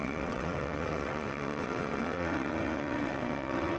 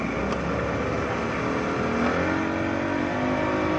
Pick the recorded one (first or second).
second